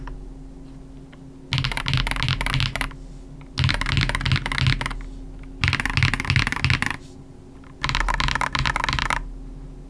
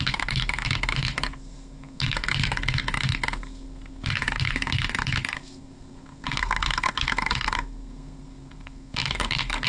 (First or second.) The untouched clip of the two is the first